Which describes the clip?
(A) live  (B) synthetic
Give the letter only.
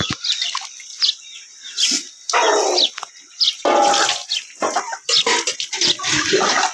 A